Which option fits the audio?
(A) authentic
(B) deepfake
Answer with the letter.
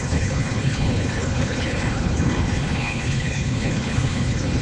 B